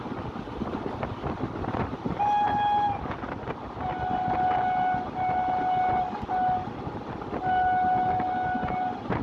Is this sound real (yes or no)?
yes